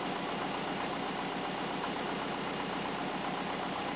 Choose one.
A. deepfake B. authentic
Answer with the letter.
B